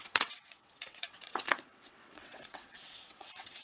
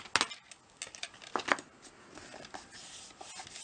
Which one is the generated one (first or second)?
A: first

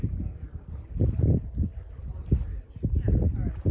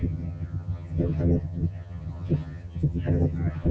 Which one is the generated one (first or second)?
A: second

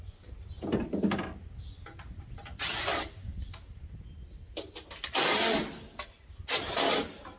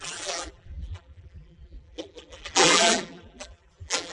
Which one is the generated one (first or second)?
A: second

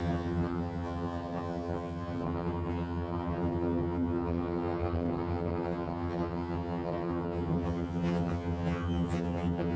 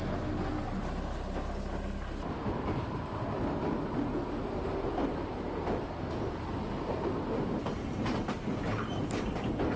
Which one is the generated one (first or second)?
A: first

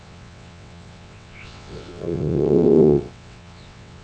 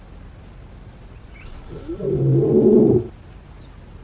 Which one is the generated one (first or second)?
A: first